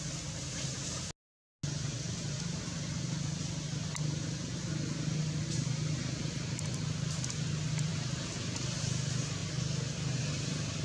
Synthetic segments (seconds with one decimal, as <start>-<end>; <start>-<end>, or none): none